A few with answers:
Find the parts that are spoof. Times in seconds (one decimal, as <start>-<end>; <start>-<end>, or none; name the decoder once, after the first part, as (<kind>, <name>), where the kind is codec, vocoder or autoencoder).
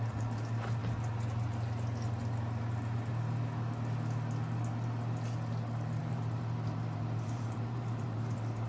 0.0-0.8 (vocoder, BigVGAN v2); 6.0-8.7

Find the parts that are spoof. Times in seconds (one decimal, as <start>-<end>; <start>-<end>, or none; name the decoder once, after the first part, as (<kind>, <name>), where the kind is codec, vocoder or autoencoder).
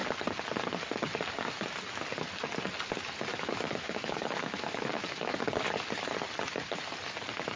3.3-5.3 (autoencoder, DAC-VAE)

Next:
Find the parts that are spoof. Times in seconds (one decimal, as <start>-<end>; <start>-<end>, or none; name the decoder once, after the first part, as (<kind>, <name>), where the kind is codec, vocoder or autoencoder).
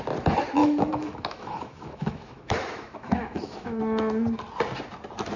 0.6-3.8 (autoencoder, DAC-VAE)